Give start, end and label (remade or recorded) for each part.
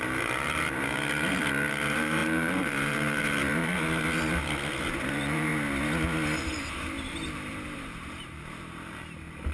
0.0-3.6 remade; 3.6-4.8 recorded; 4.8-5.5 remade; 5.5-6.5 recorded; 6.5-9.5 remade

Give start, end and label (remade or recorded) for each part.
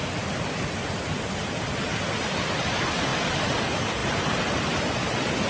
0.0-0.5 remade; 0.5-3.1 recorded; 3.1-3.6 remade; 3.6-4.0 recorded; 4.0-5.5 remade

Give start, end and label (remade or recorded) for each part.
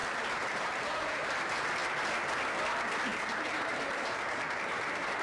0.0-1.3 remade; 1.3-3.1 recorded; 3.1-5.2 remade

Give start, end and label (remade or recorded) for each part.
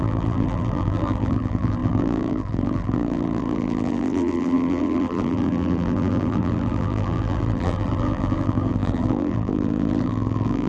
0.0-10.7 remade